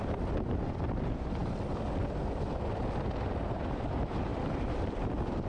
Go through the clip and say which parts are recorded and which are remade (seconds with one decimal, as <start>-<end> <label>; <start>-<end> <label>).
0.0-5.5 recorded